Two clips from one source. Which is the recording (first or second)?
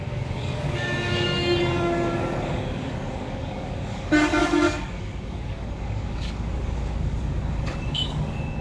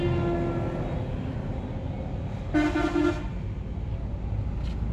second